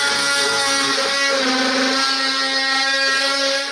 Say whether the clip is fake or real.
real